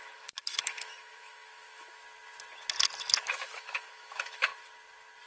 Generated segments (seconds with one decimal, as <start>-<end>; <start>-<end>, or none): 0.0-2.0; 3.2-4.5